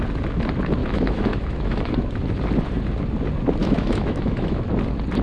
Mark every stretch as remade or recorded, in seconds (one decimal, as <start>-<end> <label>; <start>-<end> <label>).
0.0-0.8 recorded; 0.8-2.1 remade; 2.1-3.6 recorded; 3.6-4.7 remade; 4.7-5.2 recorded